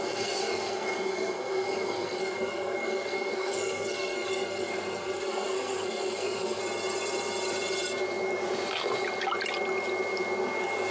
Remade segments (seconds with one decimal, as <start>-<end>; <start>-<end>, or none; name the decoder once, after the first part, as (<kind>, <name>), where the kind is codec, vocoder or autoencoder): 0.0-6.6 (codec, SNAC)